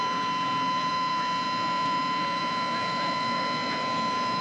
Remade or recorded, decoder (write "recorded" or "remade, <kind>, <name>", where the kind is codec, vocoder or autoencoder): remade, vocoder, Vocos